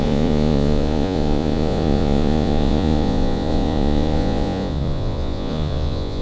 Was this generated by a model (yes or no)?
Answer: yes